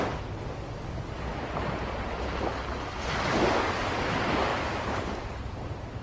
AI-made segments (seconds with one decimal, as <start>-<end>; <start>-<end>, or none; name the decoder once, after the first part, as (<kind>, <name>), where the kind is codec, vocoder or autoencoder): 1.3-2.1 (vocoder, BigVGAN v2); 4.5-5.3